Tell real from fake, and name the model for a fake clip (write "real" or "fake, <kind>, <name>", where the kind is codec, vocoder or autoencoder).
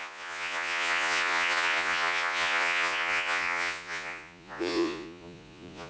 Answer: fake, vocoder, Vocos